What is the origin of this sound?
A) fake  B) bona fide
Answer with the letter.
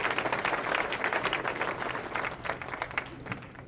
B